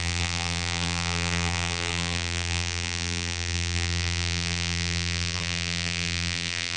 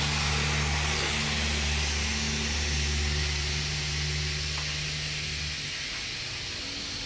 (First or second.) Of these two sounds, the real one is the second